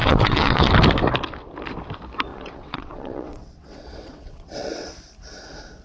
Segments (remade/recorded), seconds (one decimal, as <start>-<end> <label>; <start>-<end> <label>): 0.0-0.7 remade; 0.7-2.3 recorded; 2.3-4.9 remade; 4.9-5.8 recorded